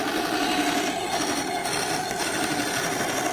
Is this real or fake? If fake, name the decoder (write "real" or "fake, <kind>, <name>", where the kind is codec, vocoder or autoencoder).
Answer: real